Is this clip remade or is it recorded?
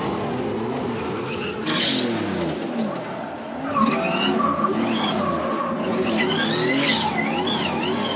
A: recorded